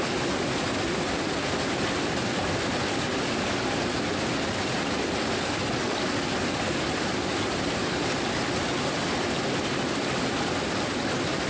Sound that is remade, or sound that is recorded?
recorded